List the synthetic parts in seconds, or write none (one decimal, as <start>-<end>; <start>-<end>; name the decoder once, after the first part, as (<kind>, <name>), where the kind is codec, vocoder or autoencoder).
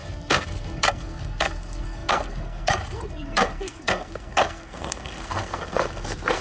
0.0-6.4 (codec, SNAC)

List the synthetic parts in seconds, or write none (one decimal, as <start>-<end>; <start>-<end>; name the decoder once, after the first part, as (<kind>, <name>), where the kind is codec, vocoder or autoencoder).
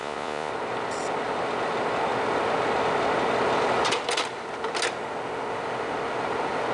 0.0-0.5 (vocoder, Vocos)